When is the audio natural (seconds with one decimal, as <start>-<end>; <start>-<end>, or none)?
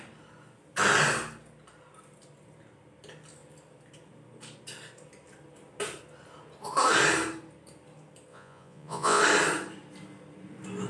0.0-8.3; 9.2-10.9